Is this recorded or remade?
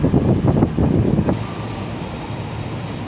remade